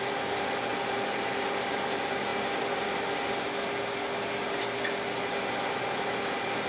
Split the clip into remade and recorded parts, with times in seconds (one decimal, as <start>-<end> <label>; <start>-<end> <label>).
0.0-6.7 recorded